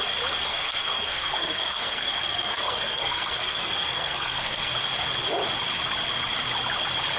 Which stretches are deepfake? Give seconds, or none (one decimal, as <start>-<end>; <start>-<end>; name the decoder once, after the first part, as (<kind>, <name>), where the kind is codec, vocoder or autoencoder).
0.5-4.7 (codec, SNAC)

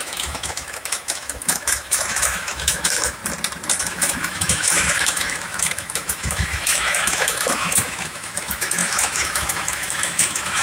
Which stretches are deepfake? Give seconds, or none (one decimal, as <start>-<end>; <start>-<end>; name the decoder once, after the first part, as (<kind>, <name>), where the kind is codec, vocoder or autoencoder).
0.0-3.2 (autoencoder, DAC-VAE); 3.8-10.6

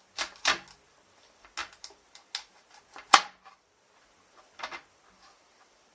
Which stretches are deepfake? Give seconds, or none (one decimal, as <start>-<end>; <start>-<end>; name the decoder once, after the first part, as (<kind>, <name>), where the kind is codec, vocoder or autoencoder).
none

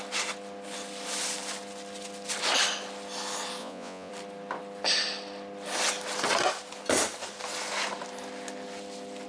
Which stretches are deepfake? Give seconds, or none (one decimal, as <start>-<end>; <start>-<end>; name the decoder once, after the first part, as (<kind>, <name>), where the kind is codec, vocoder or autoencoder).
3.6-4.1 (vocoder, Vocos)

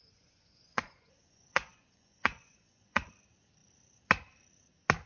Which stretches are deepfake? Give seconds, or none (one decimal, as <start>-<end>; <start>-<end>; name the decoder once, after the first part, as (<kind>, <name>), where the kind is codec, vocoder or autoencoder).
0.0-3.1 (vocoder, Vocos)